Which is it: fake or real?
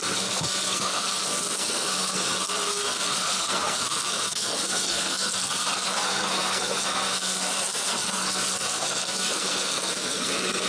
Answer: fake